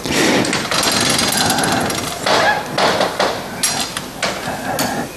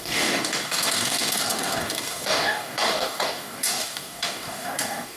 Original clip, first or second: first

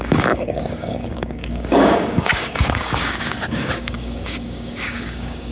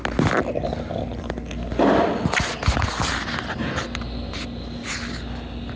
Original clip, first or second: second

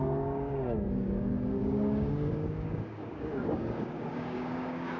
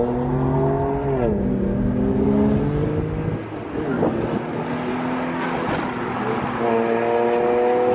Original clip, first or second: second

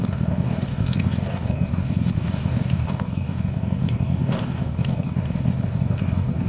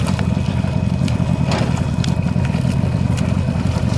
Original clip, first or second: second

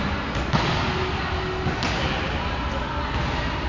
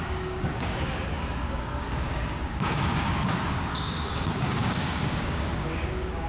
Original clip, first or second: first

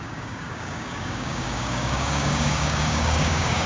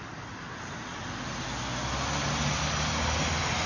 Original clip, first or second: second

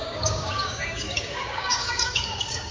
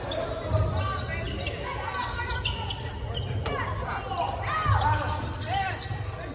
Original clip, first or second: second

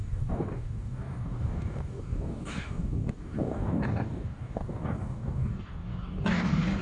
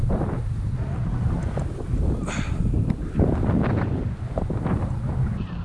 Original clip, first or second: second